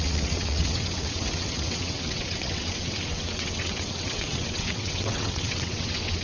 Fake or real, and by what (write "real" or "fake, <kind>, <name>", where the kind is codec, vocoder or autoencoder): fake, vocoder, WaveNeXt